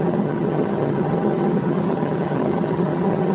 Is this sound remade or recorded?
remade